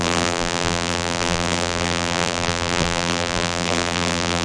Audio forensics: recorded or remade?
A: remade